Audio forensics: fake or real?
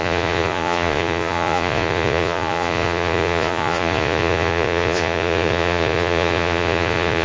fake